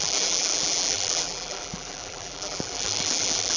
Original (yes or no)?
no